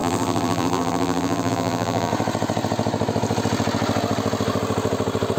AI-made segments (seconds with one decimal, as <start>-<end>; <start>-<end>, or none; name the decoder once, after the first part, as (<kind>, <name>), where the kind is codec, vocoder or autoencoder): 0.0-2.1 (vocoder, BigVGAN v2)